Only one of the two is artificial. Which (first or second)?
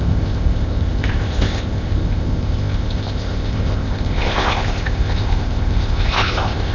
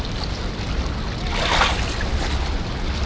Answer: first